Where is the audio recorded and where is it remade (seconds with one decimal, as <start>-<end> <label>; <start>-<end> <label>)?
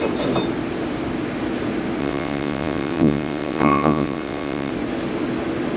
0.0-2.0 recorded; 2.0-4.7 remade; 4.7-5.8 recorded